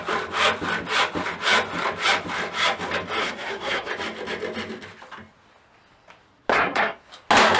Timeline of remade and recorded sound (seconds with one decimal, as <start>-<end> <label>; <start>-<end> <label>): 0.0-3.2 recorded; 3.2-3.9 remade; 3.9-6.5 recorded; 6.5-7.1 remade; 7.1-7.6 recorded